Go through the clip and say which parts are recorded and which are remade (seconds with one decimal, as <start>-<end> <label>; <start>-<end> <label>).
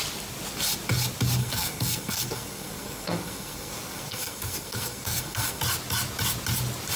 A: 0.0-1.4 recorded; 1.4-5.6 remade; 5.6-7.0 recorded